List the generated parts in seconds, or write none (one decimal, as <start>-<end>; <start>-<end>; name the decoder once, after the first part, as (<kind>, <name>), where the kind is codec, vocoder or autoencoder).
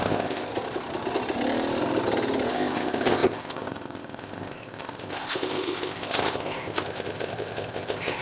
0.0-0.5 (codec, ZipCodec); 2.5-8.2